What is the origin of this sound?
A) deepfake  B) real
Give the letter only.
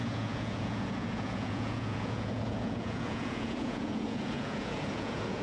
A